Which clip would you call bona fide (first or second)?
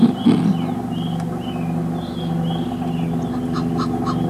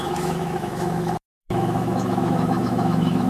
first